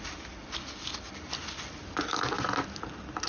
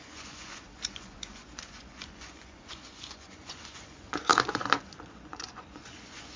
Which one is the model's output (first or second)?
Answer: second